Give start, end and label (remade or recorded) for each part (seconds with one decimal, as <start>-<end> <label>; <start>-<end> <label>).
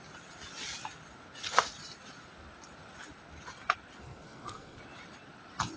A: 0.0-4.0 recorded; 4.0-4.8 remade; 4.8-5.8 recorded